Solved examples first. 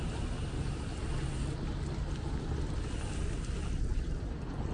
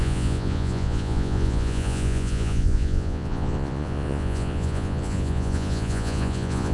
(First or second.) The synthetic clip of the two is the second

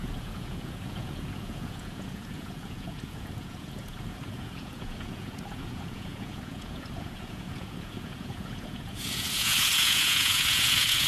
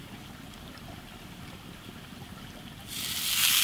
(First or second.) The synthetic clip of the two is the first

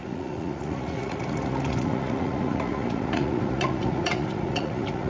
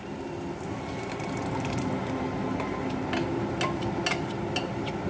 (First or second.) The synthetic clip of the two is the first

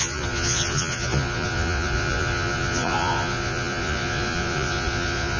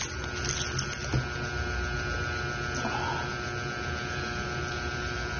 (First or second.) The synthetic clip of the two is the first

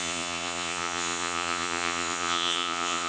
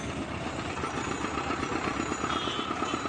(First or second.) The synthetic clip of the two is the first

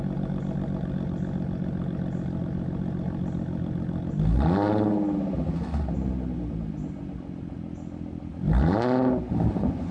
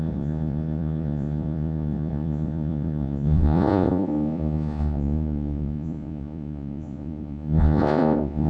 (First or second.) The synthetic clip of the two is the second